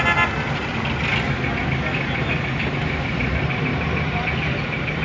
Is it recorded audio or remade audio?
recorded